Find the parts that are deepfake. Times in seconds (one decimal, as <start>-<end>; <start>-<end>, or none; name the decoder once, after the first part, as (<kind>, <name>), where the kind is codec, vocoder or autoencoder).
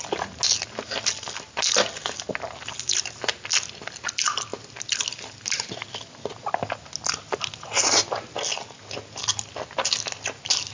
none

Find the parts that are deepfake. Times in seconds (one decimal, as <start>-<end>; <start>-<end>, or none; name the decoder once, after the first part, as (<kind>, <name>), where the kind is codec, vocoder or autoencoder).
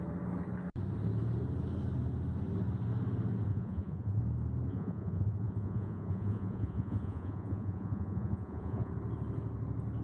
3.5-4.2 (vocoder, Vocos); 4.7-8.9